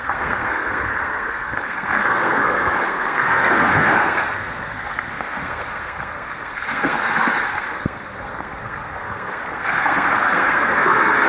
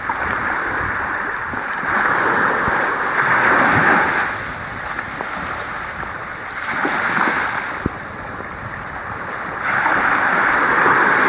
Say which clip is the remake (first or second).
first